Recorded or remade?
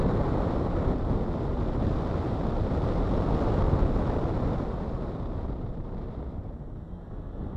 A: recorded